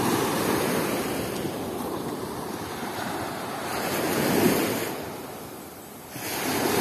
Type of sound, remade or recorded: recorded